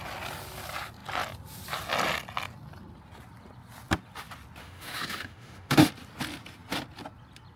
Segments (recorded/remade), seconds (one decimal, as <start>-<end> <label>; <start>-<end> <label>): 0.0-4.6 recorded; 4.6-5.9 remade; 5.9-7.6 recorded

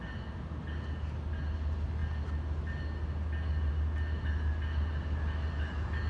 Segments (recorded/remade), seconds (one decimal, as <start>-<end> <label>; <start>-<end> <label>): 0.0-6.1 recorded

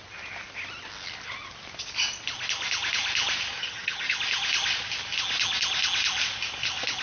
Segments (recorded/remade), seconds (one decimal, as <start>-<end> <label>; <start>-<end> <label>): 0.0-3.6 recorded; 3.6-4.2 remade; 4.2-7.0 recorded

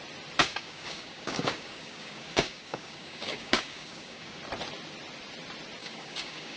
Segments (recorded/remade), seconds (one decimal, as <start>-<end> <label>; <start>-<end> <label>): 0.0-0.4 recorded; 0.4-4.4 remade; 4.4-5.8 recorded; 5.8-6.6 remade

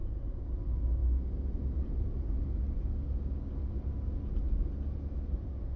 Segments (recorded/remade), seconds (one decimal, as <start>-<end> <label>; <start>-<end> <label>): 0.0-0.5 remade; 0.5-5.8 recorded

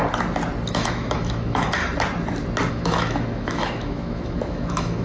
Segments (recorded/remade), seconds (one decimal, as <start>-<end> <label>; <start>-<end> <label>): 0.0-0.7 recorded; 0.7-1.8 remade; 1.8-2.7 recorded; 2.7-5.0 remade

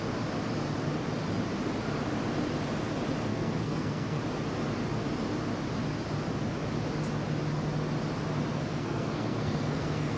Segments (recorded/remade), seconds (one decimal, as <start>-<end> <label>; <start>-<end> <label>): 0.0-3.3 recorded; 3.3-4.2 remade; 4.2-8.5 recorded; 8.5-10.2 remade

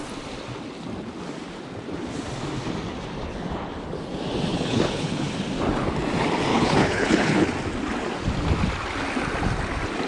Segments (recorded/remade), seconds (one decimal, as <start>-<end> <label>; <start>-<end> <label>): 0.0-4.5 recorded; 4.5-5.3 remade; 5.3-6.5 recorded; 6.5-7.5 remade; 7.5-10.1 recorded